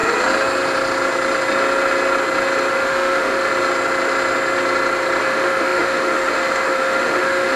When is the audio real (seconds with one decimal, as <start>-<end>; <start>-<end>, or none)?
0.0-2.7; 3.5-5.2